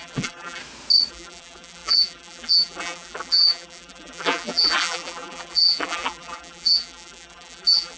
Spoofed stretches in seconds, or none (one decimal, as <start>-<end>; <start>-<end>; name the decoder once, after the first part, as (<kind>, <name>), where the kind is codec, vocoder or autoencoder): 0.0-0.6 (vocoder, BigVGAN v2); 1.1-8.0